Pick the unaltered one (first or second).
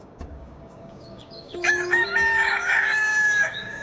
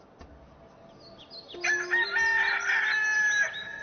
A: second